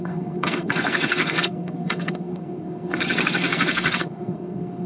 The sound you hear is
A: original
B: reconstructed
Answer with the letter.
B